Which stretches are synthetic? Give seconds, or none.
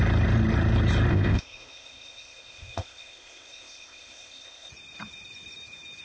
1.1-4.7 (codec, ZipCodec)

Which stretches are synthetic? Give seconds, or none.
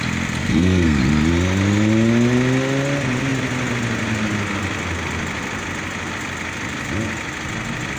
0.4-1.0 (codec, SNAC)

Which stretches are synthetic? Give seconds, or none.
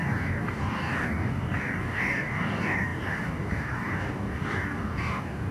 0.0-5.5 (codec, DAC)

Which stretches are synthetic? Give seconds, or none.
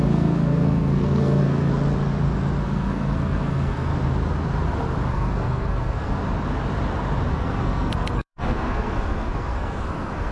0.0-1.7 (codec, SNAC); 2.6-3.9; 5.1-6.2; 7.3-10.3